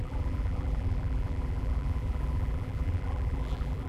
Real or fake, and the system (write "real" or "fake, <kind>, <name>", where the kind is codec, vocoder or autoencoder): fake, vocoder, BigVGAN v2